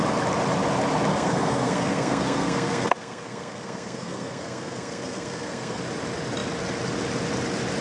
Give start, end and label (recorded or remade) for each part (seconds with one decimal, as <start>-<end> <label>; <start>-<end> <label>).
0.0-1.1 recorded; 1.1-5.8 remade; 5.8-7.8 recorded